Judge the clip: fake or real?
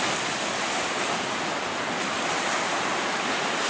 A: fake